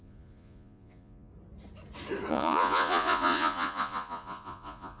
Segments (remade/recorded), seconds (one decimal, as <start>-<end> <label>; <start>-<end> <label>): 0.0-1.3 remade; 1.3-2.3 recorded; 2.3-5.0 remade